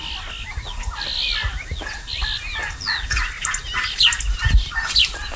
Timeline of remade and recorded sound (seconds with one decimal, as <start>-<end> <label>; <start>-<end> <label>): 0.0-5.4 recorded